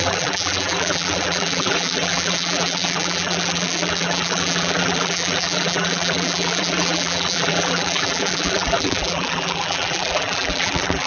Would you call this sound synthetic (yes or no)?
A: yes